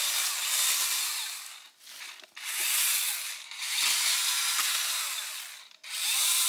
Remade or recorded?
recorded